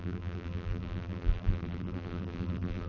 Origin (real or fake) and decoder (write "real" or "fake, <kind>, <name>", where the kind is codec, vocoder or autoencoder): fake, vocoder, BigVGAN v2